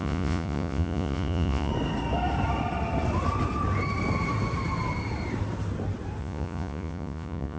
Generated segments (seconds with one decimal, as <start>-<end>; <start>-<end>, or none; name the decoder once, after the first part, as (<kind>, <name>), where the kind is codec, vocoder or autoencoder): 0.0-1.7 (vocoder, Vocos); 6.2-7.6